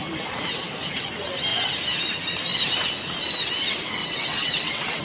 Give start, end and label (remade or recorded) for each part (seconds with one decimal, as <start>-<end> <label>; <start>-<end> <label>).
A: 0.0-4.0 recorded; 4.0-5.0 remade